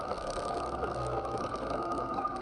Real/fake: fake